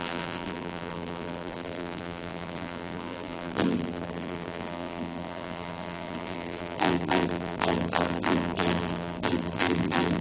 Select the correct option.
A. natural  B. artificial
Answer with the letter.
B